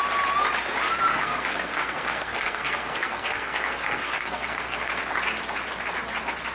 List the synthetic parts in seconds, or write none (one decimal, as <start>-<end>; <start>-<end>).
1.1-5.0